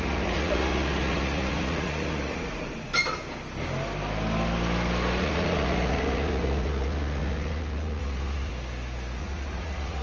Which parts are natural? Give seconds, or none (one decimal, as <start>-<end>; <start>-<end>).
2.9-5.2; 8.5-9.2